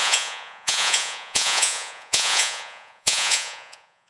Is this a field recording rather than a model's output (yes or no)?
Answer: no